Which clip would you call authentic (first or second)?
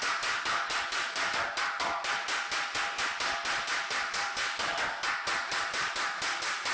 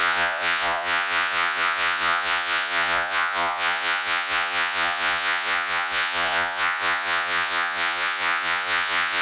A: first